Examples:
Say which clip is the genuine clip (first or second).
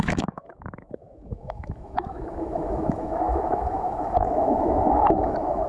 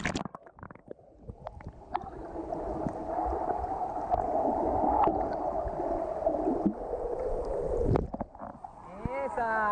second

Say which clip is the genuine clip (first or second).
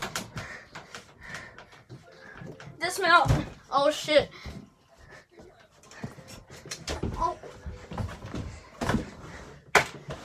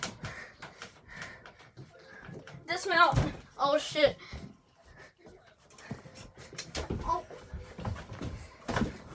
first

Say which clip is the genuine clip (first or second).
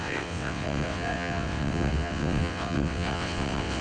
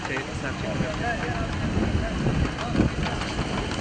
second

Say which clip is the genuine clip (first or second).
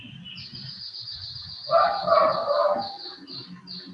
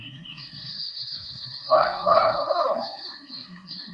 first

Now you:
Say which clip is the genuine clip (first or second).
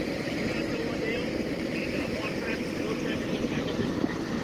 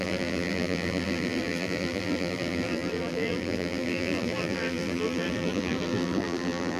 first